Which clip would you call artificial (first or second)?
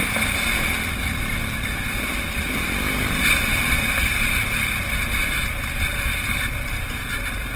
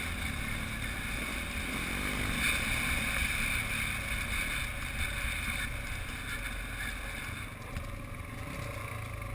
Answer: first